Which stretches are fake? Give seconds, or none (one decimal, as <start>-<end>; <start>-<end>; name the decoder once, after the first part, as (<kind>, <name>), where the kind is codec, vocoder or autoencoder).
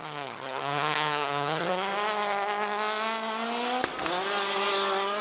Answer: 0.0-1.9 (vocoder, HiFi-GAN)